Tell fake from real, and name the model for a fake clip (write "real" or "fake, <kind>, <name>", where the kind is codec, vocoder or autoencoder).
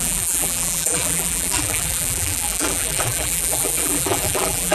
fake, vocoder, BigVGAN v2